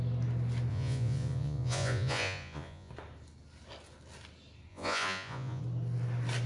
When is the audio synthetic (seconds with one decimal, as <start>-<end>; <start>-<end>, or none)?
0.7-2.9; 4.7-5.6